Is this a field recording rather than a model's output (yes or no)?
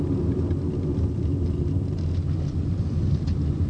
yes